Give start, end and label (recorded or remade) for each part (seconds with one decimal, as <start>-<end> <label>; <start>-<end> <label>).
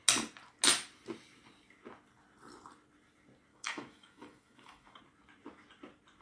0.0-3.5 recorded; 3.5-5.0 remade; 5.0-6.2 recorded